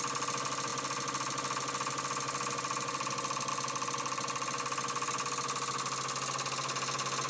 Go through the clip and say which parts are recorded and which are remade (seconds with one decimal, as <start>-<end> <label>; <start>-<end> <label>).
0.0-7.3 recorded